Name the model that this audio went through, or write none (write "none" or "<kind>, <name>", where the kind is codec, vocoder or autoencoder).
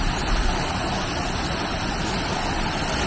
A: none